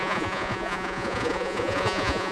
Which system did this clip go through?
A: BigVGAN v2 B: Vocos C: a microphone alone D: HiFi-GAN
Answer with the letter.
B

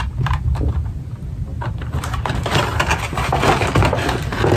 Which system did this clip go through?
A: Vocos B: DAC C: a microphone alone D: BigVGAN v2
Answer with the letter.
C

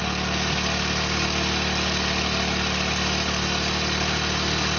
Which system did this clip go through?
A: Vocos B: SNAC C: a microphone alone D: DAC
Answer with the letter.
C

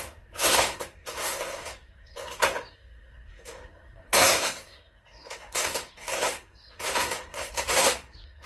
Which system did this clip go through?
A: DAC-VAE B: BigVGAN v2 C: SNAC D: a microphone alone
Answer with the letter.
C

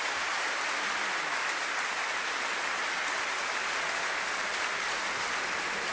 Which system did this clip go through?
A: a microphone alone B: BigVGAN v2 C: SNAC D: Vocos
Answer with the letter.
A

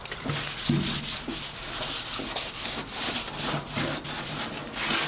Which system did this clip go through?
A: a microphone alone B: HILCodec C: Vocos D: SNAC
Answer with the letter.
A